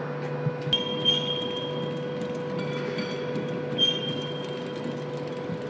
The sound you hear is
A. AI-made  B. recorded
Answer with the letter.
B